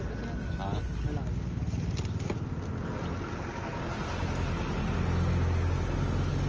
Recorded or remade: recorded